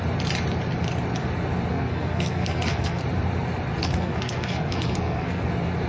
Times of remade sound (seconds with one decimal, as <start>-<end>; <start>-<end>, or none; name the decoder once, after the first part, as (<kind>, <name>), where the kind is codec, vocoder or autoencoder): 1.7-3.0 (codec, SNAC); 3.8-5.4